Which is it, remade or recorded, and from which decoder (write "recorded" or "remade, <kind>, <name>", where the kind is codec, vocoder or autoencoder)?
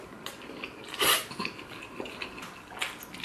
recorded